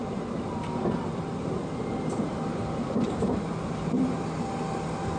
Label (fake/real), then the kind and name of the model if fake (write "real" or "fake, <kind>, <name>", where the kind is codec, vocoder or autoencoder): real